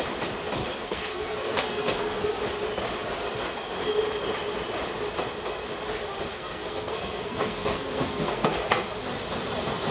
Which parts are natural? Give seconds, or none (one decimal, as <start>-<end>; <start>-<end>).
0.0-0.6; 2.4-6.3; 8.9-9.9